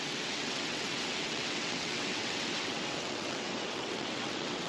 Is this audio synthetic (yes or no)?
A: yes